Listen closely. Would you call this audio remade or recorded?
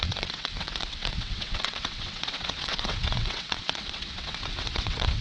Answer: remade